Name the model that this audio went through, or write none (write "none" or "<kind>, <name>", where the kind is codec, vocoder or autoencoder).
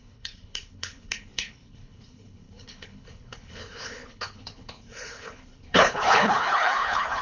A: codec, HILCodec